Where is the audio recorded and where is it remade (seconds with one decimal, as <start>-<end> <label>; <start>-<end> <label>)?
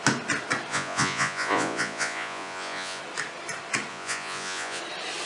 0.0-0.7 recorded; 0.7-3.0 remade; 3.0-3.9 recorded; 3.9-4.8 remade; 4.8-5.3 recorded